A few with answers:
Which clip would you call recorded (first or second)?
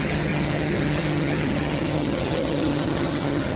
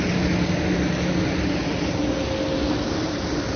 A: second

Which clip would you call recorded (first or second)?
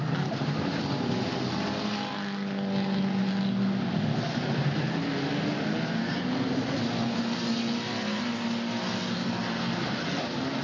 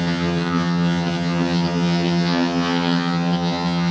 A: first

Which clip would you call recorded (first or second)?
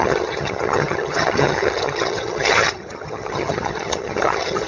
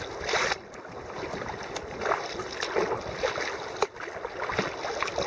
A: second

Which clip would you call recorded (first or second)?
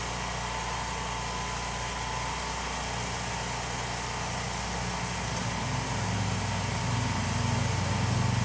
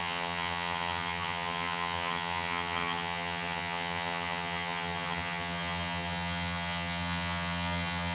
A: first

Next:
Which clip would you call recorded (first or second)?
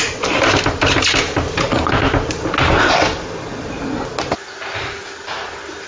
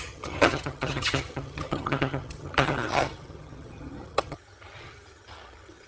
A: first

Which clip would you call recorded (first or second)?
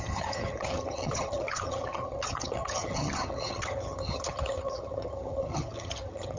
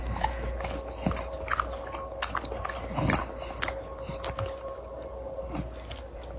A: second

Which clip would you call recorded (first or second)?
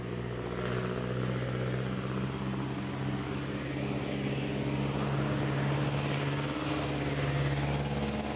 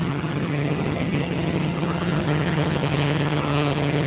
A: first